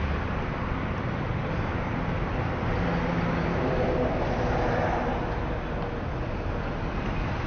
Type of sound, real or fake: real